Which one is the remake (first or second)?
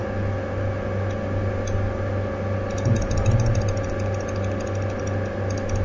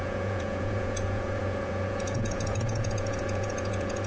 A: second